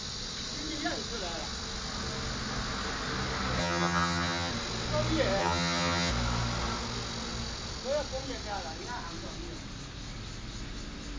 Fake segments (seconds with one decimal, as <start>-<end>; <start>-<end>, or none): 3.6-4.5; 5.4-6.1